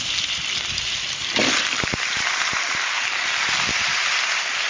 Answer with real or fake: fake